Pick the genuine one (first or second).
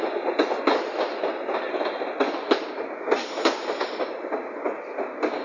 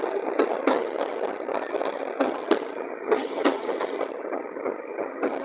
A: first